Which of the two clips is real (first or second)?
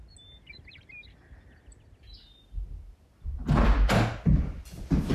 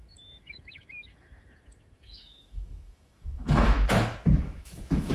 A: first